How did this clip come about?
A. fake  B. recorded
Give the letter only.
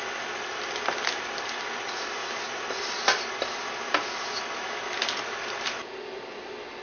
B